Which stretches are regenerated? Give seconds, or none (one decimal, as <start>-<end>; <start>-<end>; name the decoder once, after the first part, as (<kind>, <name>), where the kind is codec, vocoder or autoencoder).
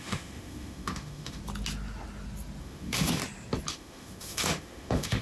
0.0-1.4 (autoencoder, DAC-VAE); 2.6-3.2; 3.7-5.2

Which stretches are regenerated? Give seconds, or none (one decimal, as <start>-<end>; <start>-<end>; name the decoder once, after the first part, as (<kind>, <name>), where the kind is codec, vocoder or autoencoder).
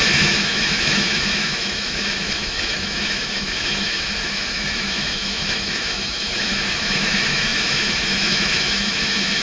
0.0-9.4 (autoencoder, DAC-VAE)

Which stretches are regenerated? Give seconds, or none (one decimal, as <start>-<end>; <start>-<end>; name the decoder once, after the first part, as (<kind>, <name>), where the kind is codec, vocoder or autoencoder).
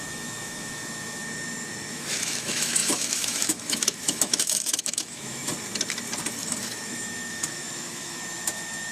0.0-1.2 (autoencoder, DAC-VAE); 1.9-5.5; 6.6-8.9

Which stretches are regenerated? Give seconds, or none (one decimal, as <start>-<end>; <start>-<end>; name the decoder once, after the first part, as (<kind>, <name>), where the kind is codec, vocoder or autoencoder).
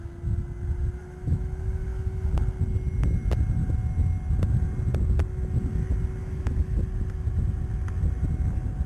1.0-2.4 (autoencoder, DAC-VAE); 6.2-6.8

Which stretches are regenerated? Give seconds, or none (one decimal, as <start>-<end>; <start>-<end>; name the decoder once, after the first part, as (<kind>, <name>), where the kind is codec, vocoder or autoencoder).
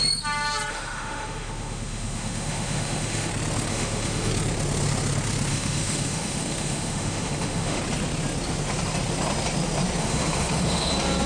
0.7-3.3 (autoencoder, DAC-VAE); 3.7-4.3; 5.5-7.8; 10.0-10.9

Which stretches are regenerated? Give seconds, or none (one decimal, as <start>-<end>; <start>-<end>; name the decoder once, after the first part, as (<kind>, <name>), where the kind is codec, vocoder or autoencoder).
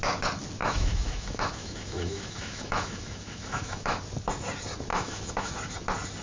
0.6-4.0 (autoencoder, DAC-VAE); 4.9-5.5